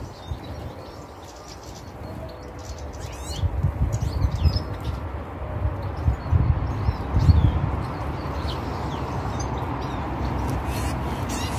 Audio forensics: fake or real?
real